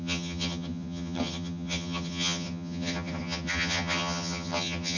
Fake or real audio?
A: fake